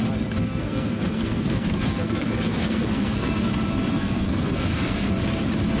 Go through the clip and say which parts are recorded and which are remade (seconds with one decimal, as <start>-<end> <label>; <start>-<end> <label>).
0.0-0.4 recorded; 0.4-3.5 remade; 3.5-3.9 recorded; 3.9-5.1 remade; 5.1-5.8 recorded